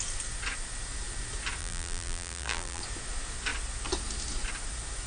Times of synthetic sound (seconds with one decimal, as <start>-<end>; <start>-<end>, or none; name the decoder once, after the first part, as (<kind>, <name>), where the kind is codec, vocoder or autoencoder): 1.6-2.8 (vocoder, BigVGAN v2)